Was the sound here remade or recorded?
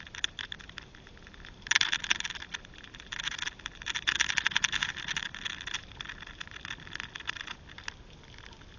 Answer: recorded